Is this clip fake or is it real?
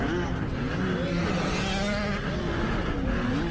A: real